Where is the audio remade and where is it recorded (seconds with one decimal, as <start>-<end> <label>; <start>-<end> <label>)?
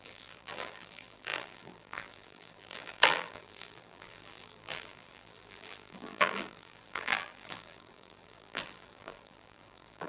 0.0-10.1 remade